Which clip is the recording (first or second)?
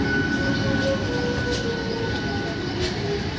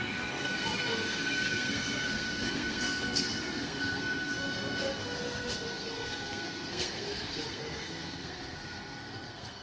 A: first